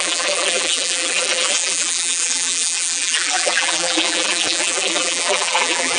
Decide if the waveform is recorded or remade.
remade